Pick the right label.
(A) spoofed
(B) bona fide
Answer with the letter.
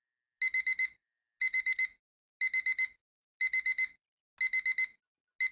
B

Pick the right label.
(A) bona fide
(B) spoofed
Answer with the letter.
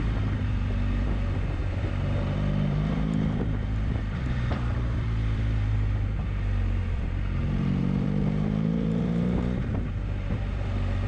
B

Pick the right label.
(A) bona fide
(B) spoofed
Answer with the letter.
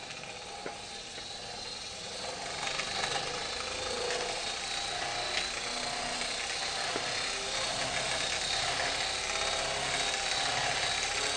A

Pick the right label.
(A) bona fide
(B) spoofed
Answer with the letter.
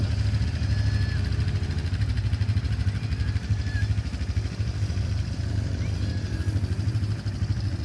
A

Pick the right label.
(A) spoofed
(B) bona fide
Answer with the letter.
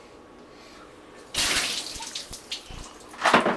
B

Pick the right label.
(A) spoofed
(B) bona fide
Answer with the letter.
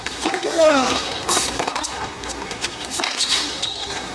A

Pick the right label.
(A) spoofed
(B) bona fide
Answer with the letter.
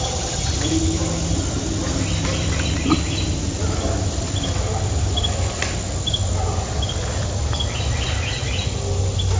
B